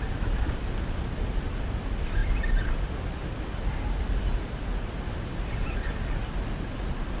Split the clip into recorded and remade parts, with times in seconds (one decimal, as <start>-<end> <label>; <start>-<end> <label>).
0.0-7.2 recorded